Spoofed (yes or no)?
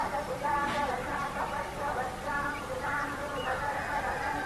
no